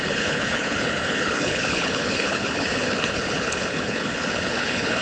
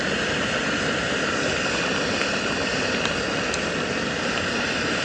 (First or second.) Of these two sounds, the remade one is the first